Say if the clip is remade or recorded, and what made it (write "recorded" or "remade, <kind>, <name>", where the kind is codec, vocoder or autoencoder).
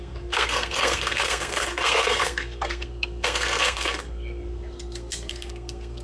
remade, codec, SNAC